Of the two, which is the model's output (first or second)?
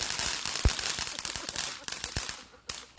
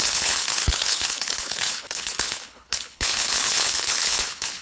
second